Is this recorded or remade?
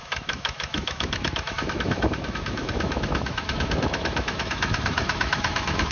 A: remade